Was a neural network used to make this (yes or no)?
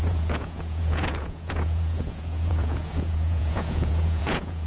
yes